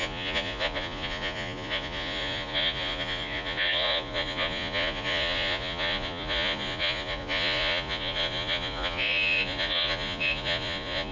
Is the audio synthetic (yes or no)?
yes